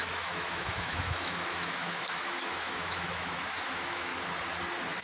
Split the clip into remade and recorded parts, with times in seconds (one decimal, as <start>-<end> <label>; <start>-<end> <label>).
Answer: 0.0-4.1 remade; 4.1-5.0 recorded